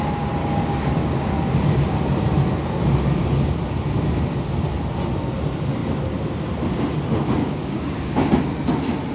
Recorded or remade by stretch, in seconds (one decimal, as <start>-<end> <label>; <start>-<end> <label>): 0.0-0.4 recorded; 0.4-1.3 remade; 1.3-7.4 recorded; 7.4-8.3 remade; 8.3-9.1 recorded